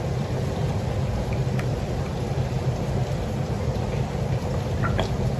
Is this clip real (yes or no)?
no